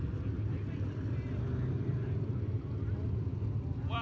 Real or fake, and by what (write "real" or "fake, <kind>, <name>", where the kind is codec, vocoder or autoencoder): real